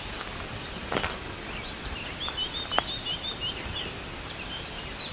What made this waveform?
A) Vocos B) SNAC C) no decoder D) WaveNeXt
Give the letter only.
C